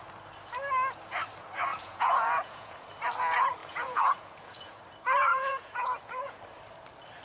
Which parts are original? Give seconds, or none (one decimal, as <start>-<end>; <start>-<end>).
0.0-1.7; 2.9-3.6; 4.8-5.3; 6.4-7.2